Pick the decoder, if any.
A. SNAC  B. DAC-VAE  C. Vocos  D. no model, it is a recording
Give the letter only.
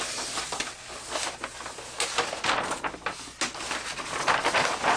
D